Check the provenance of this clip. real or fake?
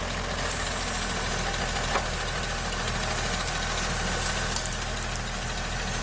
real